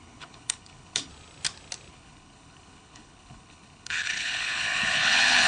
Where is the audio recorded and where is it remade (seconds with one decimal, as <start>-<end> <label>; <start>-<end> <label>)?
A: 0.0-1.1 remade; 1.1-1.9 recorded; 1.9-5.5 remade